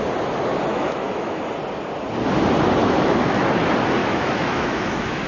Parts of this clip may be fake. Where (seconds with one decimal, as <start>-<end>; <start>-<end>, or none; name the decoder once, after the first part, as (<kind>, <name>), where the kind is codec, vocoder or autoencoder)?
0.7-1.4 (autoencoder, DAC-VAE); 2.8-3.5; 4.0-5.3